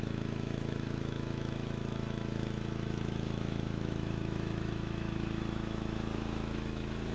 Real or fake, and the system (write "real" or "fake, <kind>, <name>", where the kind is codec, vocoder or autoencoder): fake, autoencoder, DAC-VAE